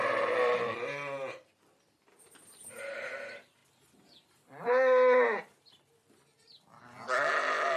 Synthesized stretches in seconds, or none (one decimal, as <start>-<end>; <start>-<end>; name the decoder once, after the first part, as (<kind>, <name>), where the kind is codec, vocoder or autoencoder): 0.0-3.6 (vocoder, BigVGAN v2); 7.3-7.8